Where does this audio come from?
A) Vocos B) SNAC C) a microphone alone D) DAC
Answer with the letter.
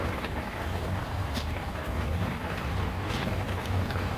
D